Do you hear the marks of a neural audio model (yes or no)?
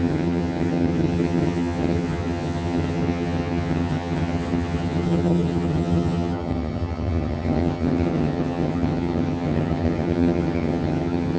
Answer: yes